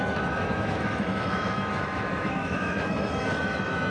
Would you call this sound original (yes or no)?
no